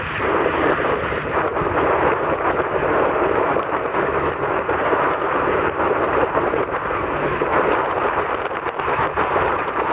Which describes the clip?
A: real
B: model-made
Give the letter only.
B